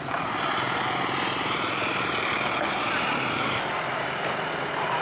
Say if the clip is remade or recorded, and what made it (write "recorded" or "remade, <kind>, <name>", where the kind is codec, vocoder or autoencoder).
recorded